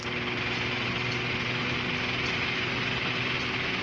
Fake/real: real